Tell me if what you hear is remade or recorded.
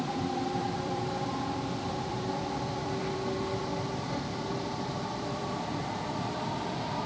remade